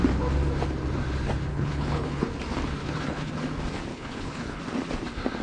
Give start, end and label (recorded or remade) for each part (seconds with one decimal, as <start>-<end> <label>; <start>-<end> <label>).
0.0-1.5 recorded; 1.5-2.3 remade; 2.3-2.8 recorded; 2.8-3.3 remade; 3.3-3.9 recorded; 3.9-4.6 remade; 4.6-5.4 recorded